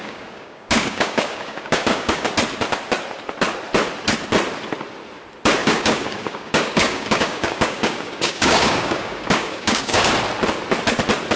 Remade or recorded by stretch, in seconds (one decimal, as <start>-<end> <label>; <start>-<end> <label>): 0.0-2.3 remade; 2.3-5.6 recorded; 5.6-10.1 remade; 10.1-11.4 recorded